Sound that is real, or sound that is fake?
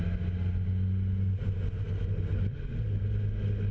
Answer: real